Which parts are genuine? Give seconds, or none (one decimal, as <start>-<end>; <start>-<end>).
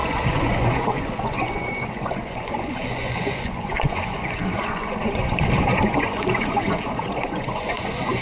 none